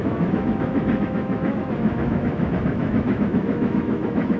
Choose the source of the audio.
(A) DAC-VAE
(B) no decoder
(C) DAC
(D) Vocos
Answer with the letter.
A